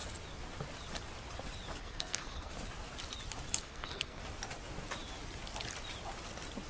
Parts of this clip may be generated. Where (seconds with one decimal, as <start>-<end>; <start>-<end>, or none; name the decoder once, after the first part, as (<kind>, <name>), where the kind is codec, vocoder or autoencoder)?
1.8-2.5 (codec, SNAC); 3.6-4.2